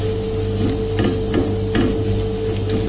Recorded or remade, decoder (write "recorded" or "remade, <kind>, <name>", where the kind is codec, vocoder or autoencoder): recorded